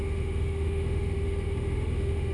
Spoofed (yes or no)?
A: yes